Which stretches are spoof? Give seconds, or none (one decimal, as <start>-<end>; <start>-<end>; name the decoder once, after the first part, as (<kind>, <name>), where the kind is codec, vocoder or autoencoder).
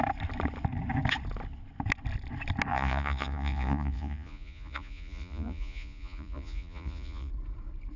2.7-7.3 (vocoder, Vocos)